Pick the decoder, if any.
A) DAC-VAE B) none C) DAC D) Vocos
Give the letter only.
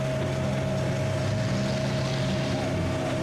B